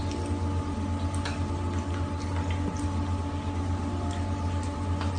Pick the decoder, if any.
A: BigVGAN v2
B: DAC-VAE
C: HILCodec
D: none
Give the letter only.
D